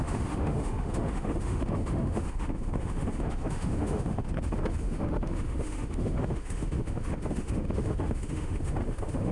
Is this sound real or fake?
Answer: fake